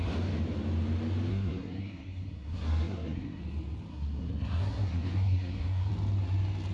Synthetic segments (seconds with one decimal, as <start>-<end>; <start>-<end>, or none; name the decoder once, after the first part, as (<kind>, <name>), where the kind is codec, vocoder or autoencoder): 1.3-3.4 (codec, SNAC); 3.9-5.9